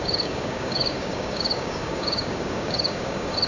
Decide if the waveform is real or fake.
fake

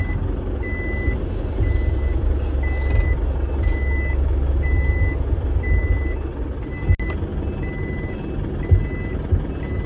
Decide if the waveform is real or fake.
real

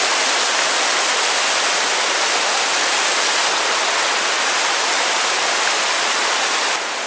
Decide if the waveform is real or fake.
real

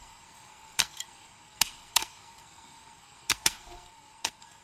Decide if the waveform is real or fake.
fake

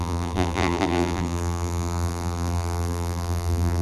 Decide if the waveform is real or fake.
fake